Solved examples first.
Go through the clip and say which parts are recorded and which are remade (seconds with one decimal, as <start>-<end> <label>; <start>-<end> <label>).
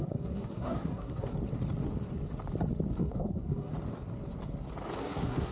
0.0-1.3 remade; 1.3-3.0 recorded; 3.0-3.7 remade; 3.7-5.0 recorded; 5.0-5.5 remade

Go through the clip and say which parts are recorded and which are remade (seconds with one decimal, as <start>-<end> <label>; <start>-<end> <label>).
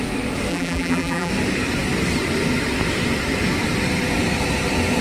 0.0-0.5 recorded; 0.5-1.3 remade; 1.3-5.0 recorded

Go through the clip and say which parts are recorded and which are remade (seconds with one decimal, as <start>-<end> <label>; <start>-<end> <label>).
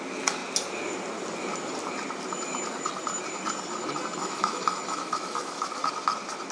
0.0-4.2 recorded; 4.2-5.8 remade; 5.8-6.5 recorded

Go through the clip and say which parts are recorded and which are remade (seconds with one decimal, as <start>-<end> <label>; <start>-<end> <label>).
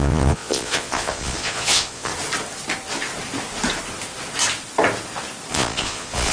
0.0-2.1 remade; 2.1-5.5 recorded; 5.5-6.3 remade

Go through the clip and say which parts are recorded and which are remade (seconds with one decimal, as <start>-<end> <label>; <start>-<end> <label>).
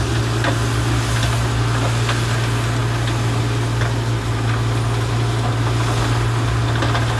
0.0-7.2 recorded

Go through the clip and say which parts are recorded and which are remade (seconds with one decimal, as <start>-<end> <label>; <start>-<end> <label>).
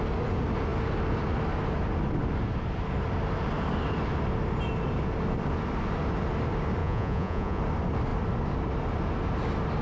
0.0-6.8 recorded; 6.8-7.6 remade; 7.6-9.8 recorded